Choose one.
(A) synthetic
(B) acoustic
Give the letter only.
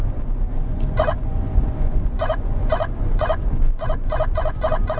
A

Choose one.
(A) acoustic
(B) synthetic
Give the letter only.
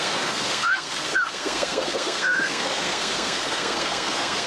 B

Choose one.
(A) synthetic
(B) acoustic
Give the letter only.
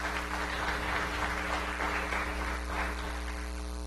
B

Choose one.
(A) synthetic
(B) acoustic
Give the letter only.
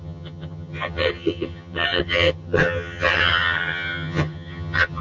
A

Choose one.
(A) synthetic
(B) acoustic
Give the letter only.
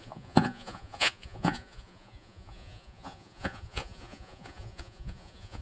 A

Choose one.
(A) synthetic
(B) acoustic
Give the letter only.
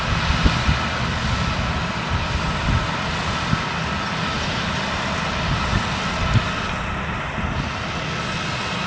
B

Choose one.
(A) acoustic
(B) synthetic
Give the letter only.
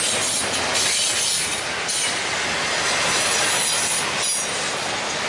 A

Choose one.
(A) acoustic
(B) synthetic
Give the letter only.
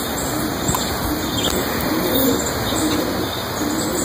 A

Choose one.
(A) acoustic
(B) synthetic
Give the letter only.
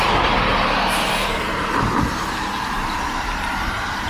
B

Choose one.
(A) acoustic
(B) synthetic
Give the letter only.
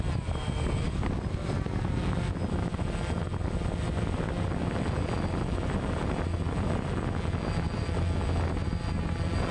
A